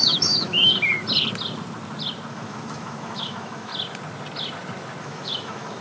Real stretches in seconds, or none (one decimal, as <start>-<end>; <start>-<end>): 0.7-2.3; 3.7-5.0